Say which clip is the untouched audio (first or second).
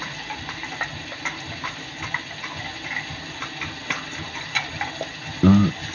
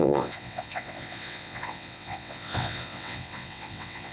first